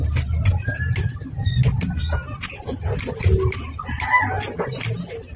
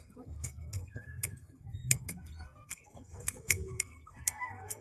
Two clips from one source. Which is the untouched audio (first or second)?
first